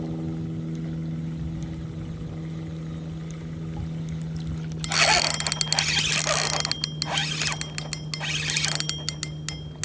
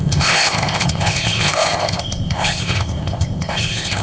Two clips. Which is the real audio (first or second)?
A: first